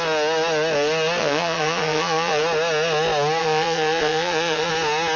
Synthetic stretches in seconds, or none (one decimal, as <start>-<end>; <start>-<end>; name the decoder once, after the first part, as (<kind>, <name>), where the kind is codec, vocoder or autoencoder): 1.2-2.4 (vocoder, Vocos); 3.4-4.7